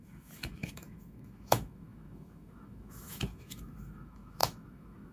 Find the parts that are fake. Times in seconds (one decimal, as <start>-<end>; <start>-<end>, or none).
0.0-5.1